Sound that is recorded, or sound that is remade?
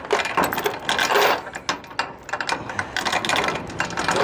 recorded